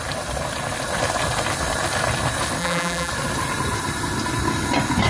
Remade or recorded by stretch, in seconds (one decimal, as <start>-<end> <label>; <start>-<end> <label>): 0.0-2.6 recorded; 2.6-3.1 remade; 3.1-5.1 recorded